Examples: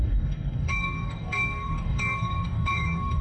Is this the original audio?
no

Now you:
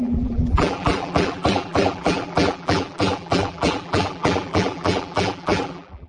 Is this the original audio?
no